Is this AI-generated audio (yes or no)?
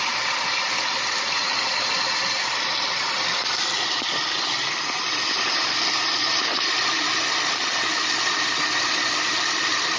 no